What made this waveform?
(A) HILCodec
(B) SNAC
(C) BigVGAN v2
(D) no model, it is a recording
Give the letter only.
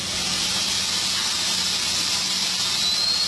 D